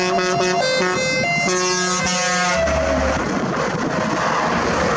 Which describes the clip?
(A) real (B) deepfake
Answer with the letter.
A